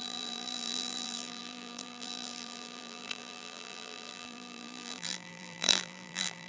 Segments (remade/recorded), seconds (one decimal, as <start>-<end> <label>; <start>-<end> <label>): 0.0-6.5 remade